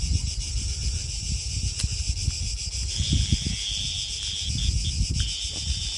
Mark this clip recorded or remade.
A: recorded